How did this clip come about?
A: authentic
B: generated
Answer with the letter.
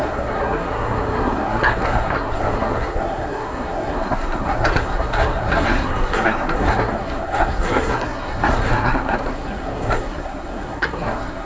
B